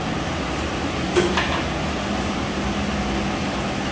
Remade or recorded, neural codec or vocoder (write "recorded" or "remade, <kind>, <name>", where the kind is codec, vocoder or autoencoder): recorded